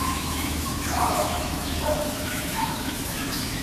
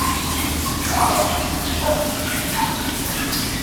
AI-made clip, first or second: first